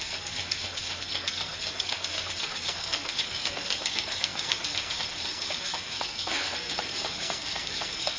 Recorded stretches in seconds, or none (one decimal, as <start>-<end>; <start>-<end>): none